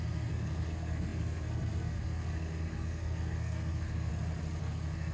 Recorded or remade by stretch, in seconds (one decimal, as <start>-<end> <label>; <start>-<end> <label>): 0.0-4.1 remade; 4.1-4.6 recorded; 4.6-5.1 remade